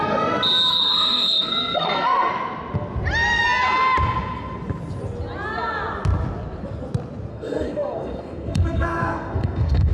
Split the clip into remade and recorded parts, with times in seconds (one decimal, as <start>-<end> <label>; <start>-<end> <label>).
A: 0.0-0.7 recorded; 0.7-2.3 remade; 2.3-7.3 recorded; 7.3-9.9 remade